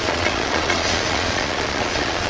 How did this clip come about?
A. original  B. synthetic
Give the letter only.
B